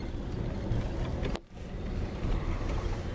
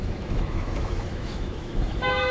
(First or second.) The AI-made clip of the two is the second